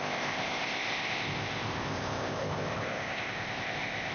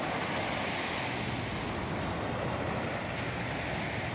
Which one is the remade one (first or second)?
first